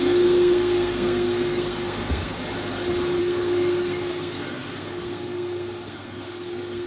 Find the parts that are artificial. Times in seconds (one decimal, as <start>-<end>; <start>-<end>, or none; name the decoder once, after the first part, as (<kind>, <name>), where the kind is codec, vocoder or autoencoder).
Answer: 0.0-2.4 (codec, SNAC); 3.2-6.9